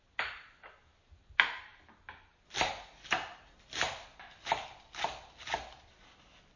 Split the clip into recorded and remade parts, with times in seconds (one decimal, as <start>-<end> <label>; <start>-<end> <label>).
0.0-6.6 recorded